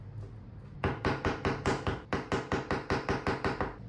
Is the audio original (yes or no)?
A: yes